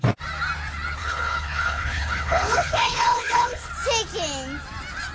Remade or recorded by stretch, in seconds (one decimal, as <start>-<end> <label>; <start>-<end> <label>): 0.0-1.0 recorded; 1.0-3.7 remade; 3.7-5.1 recorded

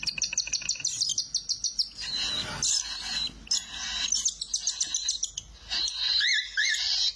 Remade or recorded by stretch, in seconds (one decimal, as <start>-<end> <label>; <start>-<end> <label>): 0.0-7.2 recorded

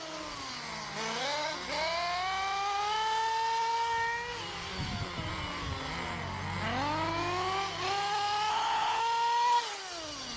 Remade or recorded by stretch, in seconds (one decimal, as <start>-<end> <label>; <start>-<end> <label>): 0.0-8.5 recorded; 8.5-9.0 remade; 9.0-10.4 recorded